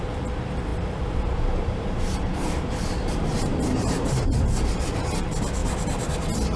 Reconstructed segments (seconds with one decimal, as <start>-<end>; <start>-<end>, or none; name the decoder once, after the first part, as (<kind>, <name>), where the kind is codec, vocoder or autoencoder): 0.7-4.7 (vocoder, BigVGAN v2)